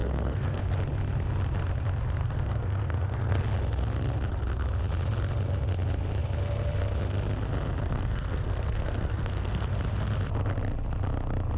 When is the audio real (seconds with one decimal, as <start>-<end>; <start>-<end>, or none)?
0.6-2.2; 3.4-7.8; 9.7-11.6